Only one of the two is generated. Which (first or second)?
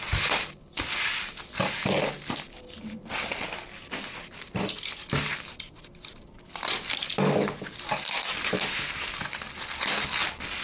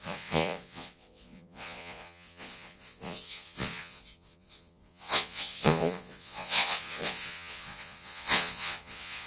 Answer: second